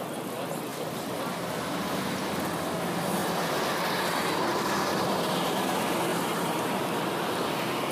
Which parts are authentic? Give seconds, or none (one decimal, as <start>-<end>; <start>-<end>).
0.0-0.7; 1.8-4.5; 5.3-6.1; 7.0-7.9